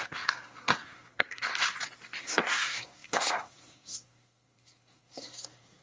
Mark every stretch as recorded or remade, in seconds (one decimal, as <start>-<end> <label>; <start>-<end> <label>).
0.0-1.5 remade; 1.5-2.2 recorded; 2.2-5.8 remade